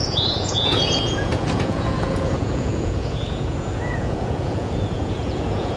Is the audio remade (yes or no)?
yes